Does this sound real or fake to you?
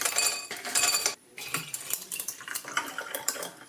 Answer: fake